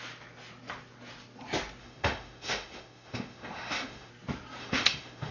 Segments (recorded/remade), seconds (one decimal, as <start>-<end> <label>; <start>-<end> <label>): 0.0-1.8 recorded; 1.8-4.1 remade; 4.1-4.6 recorded; 4.6-5.3 remade